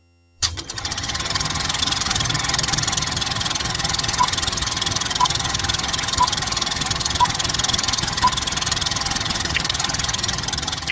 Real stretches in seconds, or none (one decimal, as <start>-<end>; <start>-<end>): none